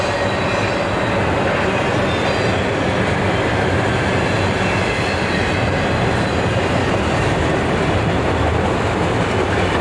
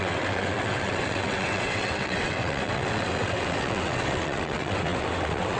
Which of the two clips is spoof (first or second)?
second